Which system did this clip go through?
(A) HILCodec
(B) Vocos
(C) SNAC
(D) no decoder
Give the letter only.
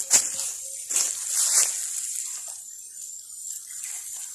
D